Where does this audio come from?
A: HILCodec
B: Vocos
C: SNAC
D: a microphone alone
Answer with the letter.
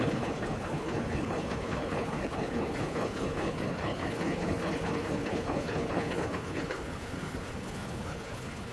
A